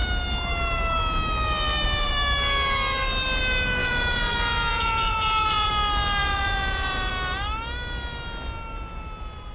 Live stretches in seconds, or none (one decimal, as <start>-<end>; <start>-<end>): 0.0-3.8; 5.7-6.2; 7.1-9.5